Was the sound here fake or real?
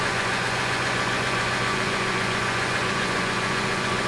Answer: fake